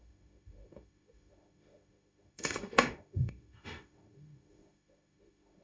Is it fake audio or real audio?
fake